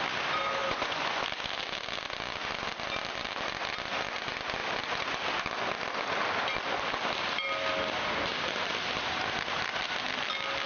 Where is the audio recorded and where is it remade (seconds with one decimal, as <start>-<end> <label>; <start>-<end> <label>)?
0.0-0.6 recorded; 0.6-1.2 remade; 1.2-10.7 recorded

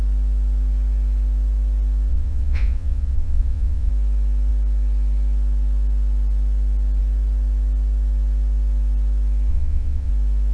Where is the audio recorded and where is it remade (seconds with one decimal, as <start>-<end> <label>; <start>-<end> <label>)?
0.0-2.1 recorded; 2.1-3.9 remade; 3.9-9.5 recorded; 9.5-10.1 remade; 10.1-10.5 recorded

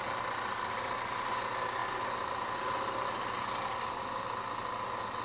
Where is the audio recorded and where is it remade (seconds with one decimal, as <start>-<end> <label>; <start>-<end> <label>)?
0.0-5.2 recorded

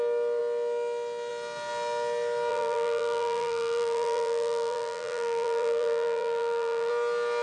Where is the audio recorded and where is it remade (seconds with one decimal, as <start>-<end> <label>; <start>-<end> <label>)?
0.0-2.5 recorded; 2.5-6.9 remade; 6.9-7.4 recorded

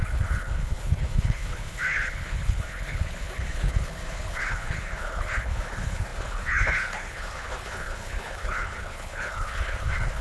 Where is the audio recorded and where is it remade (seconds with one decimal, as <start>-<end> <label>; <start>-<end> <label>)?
0.0-10.2 remade